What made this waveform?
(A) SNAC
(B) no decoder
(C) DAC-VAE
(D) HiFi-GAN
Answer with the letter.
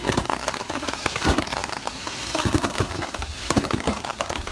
A